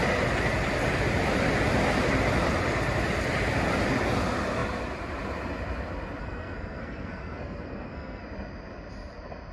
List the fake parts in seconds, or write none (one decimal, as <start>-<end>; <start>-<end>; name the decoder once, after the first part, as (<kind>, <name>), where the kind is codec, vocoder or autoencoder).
6.2-8.2 (codec, SNAC)